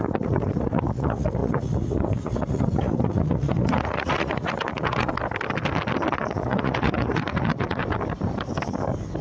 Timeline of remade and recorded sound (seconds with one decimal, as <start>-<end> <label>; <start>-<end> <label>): 0.0-5.1 remade; 5.1-6.1 recorded; 6.1-7.8 remade; 7.8-9.2 recorded